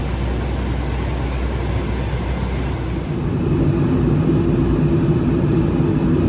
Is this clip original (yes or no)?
yes